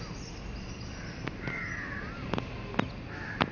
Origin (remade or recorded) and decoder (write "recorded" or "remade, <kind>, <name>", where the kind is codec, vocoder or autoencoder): recorded